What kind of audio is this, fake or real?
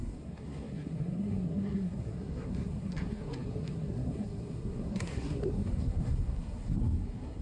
fake